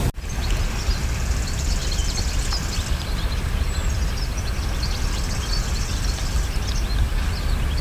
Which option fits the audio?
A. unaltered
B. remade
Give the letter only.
A